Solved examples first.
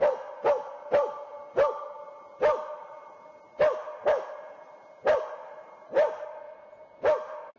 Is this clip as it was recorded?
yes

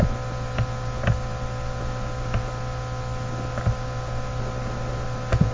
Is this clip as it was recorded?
yes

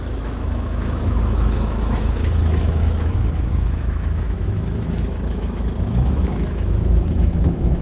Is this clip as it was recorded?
no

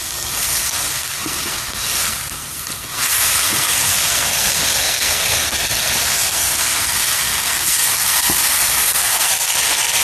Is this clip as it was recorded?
no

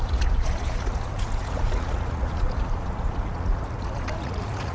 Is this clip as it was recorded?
no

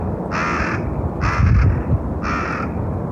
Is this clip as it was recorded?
yes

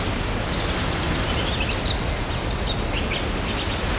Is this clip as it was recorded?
yes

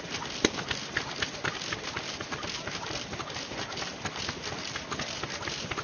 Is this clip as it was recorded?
yes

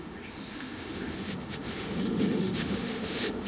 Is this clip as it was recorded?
no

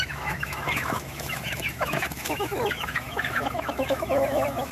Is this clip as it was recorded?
no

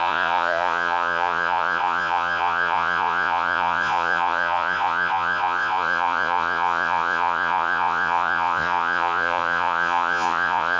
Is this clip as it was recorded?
no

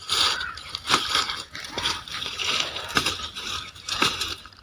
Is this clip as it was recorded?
no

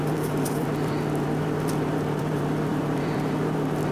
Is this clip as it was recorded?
no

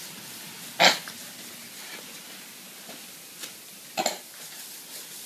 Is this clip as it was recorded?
yes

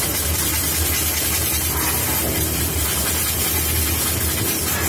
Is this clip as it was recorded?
yes